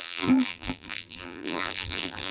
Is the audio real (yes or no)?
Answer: no